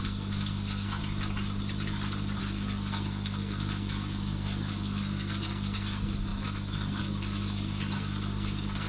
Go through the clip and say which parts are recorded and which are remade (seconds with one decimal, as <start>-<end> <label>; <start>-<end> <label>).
0.0-1.0 remade; 1.0-2.4 recorded; 2.4-8.9 remade